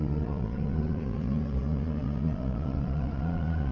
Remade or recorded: remade